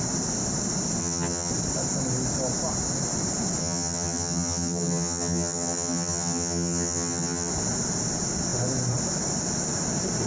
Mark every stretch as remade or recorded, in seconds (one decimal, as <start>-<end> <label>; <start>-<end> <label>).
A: 0.0-1.0 recorded; 1.0-1.5 remade; 1.5-3.6 recorded; 3.6-7.5 remade; 7.5-10.3 recorded